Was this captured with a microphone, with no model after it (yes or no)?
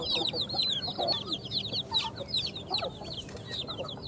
yes